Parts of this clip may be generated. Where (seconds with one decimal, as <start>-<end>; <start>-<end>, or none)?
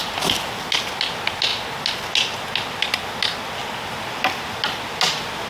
none